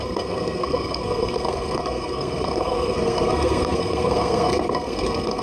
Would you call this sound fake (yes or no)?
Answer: yes